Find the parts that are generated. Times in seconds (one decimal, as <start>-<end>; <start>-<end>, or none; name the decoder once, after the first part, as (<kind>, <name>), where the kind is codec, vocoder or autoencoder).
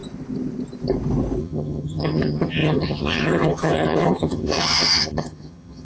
1.4-5.8 (vocoder, HiFi-GAN)